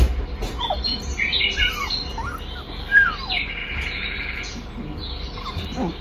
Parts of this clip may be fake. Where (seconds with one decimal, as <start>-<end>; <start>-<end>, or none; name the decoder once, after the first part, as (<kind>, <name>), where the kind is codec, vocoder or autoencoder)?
3.6-4.7 (vocoder, Vocos)